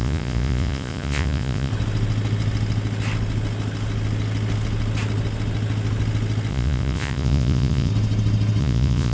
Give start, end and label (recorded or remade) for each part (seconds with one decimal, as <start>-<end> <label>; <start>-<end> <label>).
0.0-1.7 remade; 1.7-6.5 recorded; 6.5-7.9 remade; 7.9-8.6 recorded; 8.6-9.1 remade